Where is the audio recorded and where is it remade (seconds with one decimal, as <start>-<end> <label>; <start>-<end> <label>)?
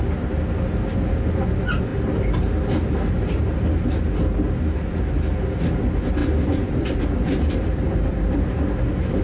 0.0-6.2 recorded; 6.2-9.2 remade